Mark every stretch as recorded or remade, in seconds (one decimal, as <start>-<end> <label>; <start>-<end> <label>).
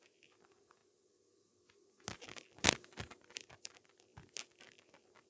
0.0-0.8 remade; 0.8-3.6 recorded; 3.6-4.1 remade; 4.1-4.6 recorded; 4.6-5.3 remade